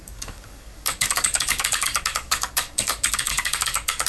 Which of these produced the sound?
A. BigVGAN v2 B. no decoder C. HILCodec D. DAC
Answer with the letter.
D